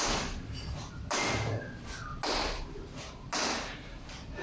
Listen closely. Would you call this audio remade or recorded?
recorded